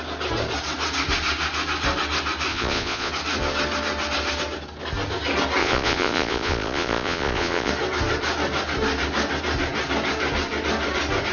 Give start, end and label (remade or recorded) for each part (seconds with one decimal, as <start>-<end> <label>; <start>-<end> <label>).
0.0-2.5 recorded; 2.5-3.1 remade; 3.1-5.6 recorded; 5.6-7.7 remade; 7.7-11.3 recorded